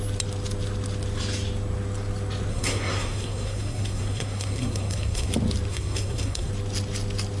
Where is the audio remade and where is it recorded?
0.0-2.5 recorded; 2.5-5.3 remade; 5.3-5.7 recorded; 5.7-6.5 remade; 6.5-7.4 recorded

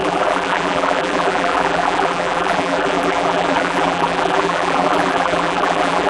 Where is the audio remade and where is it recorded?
0.0-6.1 remade

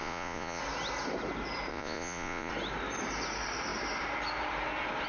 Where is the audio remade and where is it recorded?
0.0-0.6 remade; 0.6-1.7 recorded; 1.7-2.5 remade; 2.5-5.1 recorded

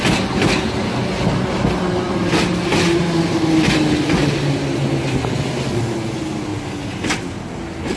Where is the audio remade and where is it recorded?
0.0-8.0 recorded

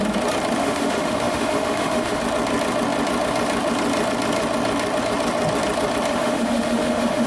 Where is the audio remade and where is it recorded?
0.0-0.6 recorded; 0.6-2.2 remade; 2.2-6.1 recorded; 6.1-7.3 remade